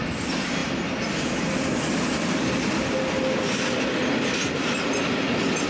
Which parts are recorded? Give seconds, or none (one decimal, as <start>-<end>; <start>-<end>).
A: 0.0-5.7